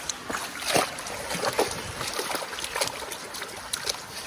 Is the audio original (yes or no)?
yes